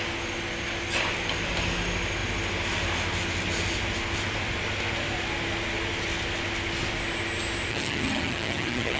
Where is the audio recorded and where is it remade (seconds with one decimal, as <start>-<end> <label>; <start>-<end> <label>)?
0.0-7.7 recorded; 7.7-9.0 remade